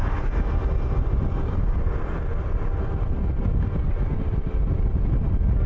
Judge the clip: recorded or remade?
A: recorded